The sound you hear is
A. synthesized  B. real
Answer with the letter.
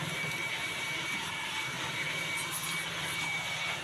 A